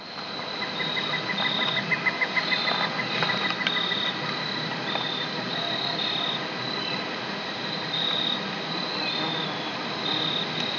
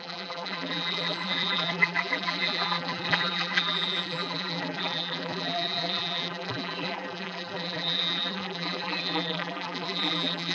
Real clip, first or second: first